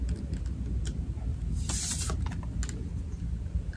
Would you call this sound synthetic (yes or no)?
no